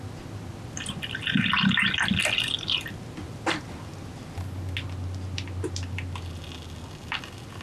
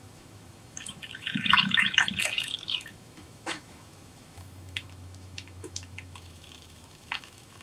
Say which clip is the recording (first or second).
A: first